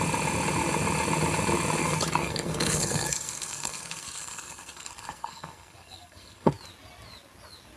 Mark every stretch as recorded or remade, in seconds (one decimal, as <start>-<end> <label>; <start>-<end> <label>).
0.0-1.8 recorded; 1.8-6.5 remade; 6.5-7.8 recorded